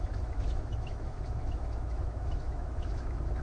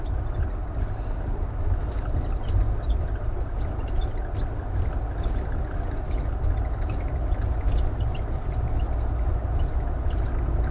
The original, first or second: second